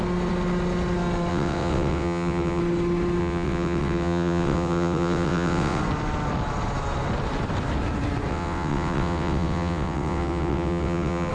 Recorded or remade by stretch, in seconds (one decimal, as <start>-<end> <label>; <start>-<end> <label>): 0.0-1.3 recorded; 1.3-2.6 remade; 2.6-3.2 recorded; 3.2-5.8 remade; 5.8-8.3 recorded; 8.3-11.3 remade